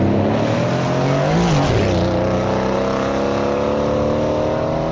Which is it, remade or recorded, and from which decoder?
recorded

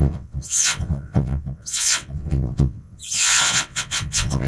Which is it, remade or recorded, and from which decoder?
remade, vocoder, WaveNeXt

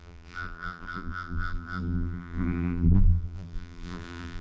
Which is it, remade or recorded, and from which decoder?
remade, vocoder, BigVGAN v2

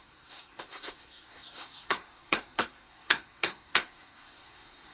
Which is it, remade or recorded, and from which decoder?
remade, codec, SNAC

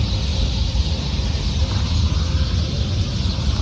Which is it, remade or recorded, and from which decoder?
recorded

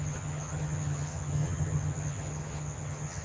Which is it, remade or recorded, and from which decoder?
remade, vocoder, HiFi-GAN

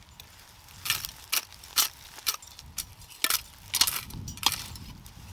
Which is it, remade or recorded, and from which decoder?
recorded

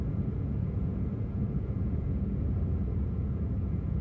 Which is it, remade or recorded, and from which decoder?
remade, vocoder, Vocos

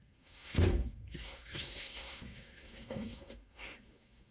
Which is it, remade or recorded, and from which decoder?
remade, codec, SNAC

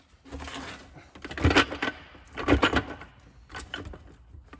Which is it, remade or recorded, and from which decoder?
recorded